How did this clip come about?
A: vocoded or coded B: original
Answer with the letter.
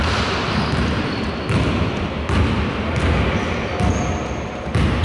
B